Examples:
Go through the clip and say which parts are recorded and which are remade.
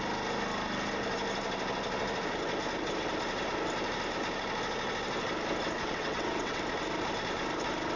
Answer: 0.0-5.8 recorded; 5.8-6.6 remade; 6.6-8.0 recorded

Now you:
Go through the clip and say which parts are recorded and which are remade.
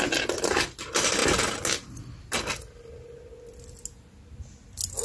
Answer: 0.0-5.0 recorded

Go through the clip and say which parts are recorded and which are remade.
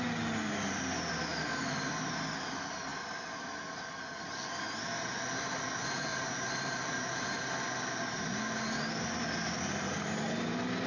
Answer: 0.0-10.9 recorded